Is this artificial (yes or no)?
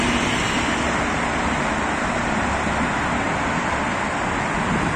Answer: no